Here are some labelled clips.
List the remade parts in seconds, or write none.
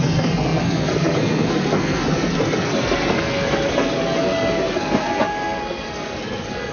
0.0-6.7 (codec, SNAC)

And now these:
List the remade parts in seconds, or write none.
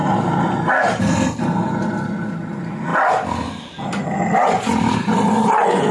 none